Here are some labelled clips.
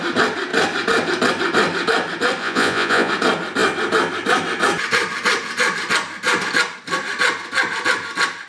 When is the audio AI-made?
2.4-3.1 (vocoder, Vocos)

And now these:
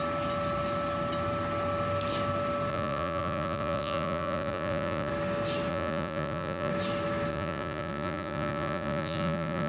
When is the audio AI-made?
2.7-5.1 (vocoder, Vocos); 5.7-6.7; 7.3-9.7

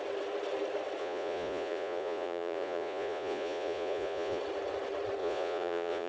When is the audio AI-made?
1.0-4.4 (vocoder, Vocos); 5.2-6.1

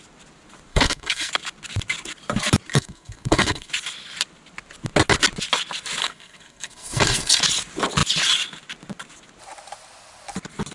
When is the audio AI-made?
0.7-1.3 (codec, SNAC); 2.7-3.7; 6.0-7.4

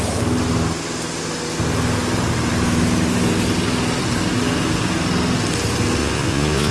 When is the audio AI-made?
6.0-6.7 (vocoder, Vocos)

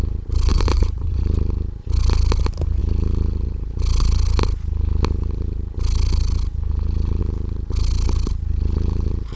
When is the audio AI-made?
0.5-1.2 (vocoder, WaveNeXt)